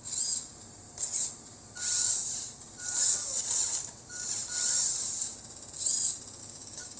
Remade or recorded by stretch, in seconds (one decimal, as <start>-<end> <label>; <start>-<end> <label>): 0.0-6.4 recorded; 6.4-7.0 remade